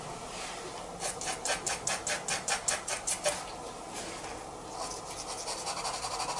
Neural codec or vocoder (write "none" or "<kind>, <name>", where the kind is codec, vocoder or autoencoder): none